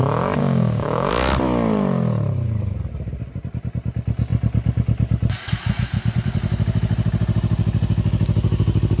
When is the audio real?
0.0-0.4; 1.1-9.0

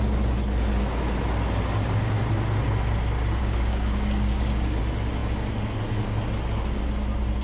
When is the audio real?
0.0-3.4; 4.8-7.4

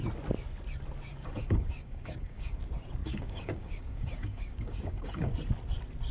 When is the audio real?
0.0-1.1; 2.6-3.0; 5.3-6.1

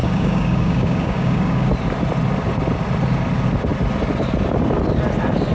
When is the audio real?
1.7-5.5

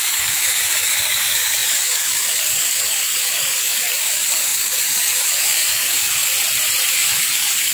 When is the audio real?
6.3-6.9